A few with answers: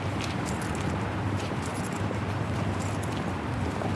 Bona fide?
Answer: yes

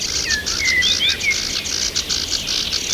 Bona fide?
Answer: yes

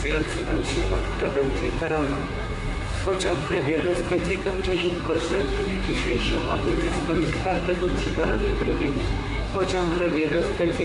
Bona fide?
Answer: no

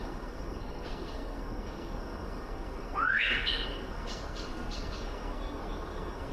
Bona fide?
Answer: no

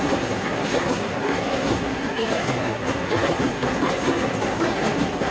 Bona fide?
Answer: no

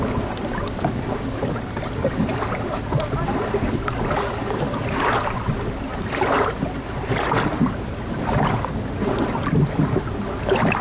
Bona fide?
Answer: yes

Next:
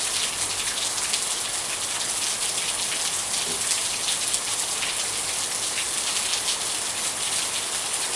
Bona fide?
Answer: yes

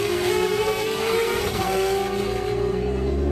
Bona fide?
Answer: no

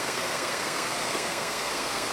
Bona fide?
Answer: no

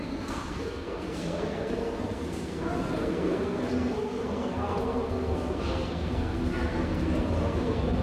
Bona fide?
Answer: no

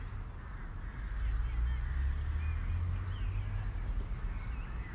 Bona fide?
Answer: yes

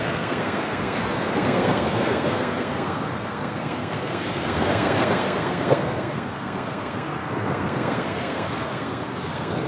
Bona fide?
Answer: no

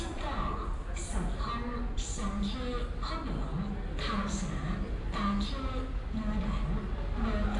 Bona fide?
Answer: yes